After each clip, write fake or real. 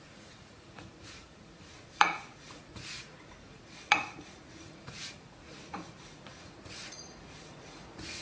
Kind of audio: fake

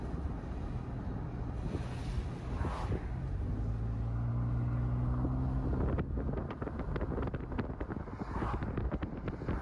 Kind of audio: real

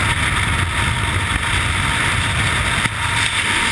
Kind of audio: real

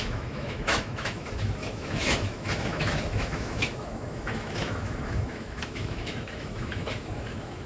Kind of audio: fake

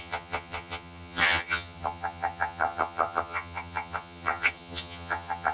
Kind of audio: fake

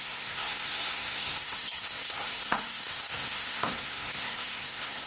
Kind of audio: fake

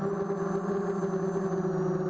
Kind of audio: real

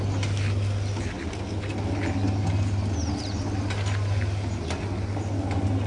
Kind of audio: real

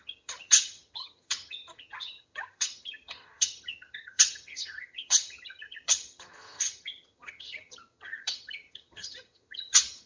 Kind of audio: fake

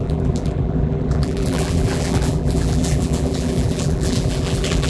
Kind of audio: fake